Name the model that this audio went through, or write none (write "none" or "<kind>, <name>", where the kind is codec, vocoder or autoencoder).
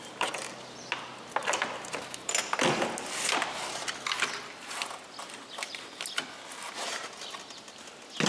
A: none